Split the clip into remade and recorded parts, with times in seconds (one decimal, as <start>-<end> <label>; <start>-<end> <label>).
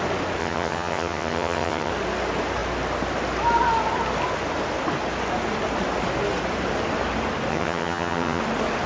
0.0-0.4 recorded; 0.4-1.9 remade; 1.9-7.5 recorded; 7.5-8.4 remade; 8.4-8.9 recorded